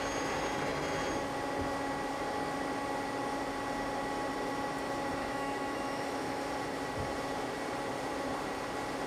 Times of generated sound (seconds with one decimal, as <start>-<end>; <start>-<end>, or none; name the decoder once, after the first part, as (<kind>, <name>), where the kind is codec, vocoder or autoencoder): 5.2-6.5 (autoencoder, DAC-VAE)